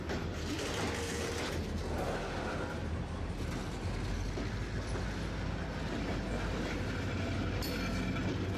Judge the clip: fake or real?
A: real